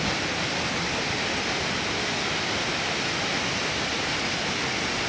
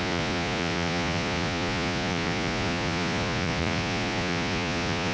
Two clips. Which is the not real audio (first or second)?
second